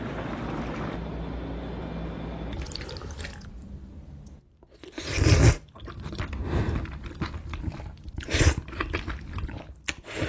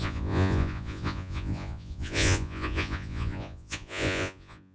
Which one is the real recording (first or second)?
first